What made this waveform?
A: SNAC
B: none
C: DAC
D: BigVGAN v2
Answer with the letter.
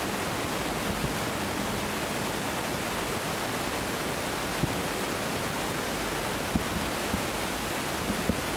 B